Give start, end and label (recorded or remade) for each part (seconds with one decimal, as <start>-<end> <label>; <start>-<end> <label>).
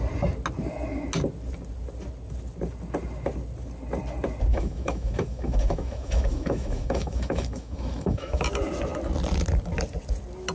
0.0-4.5 recorded; 4.5-8.4 remade; 8.4-10.5 recorded